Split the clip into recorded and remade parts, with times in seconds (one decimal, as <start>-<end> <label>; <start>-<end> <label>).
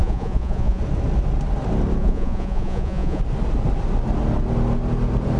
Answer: 0.0-0.8 remade; 0.8-2.0 recorded; 2.0-3.2 remade; 3.2-5.4 recorded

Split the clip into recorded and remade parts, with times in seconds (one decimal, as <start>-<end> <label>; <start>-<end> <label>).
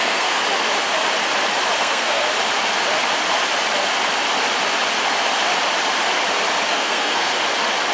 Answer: 0.0-0.4 remade; 0.4-1.8 recorded; 1.8-2.2 remade; 2.2-6.7 recorded; 6.7-7.3 remade; 7.3-7.9 recorded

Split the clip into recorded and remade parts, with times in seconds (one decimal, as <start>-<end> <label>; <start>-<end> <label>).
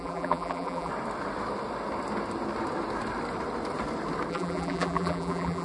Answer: 0.0-0.9 remade; 0.9-4.3 recorded; 4.3-5.6 remade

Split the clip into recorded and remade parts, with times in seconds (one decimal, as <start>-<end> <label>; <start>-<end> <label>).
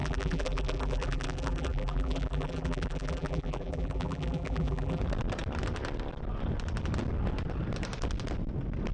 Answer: 0.0-5.0 remade; 5.0-8.9 recorded